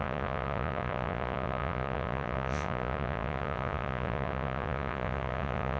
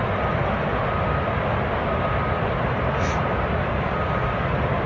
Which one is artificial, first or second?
first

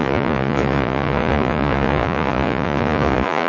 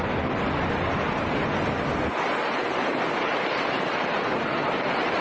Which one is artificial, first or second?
first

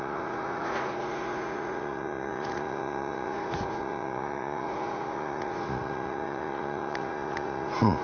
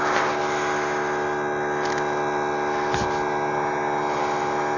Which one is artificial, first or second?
first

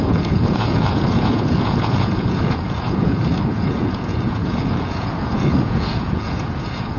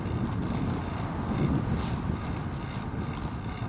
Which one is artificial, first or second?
first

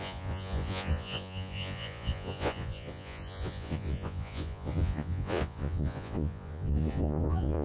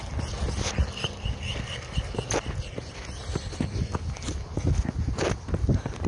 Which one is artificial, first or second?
first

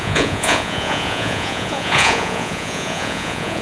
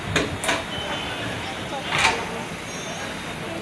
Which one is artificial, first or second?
first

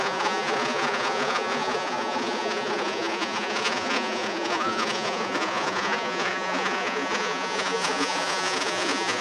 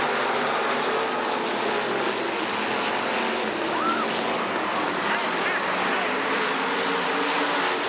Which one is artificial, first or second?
first